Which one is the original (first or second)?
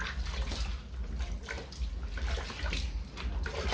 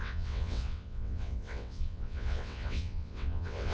first